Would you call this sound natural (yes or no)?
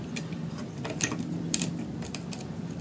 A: no